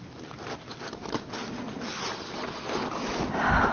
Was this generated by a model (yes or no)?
no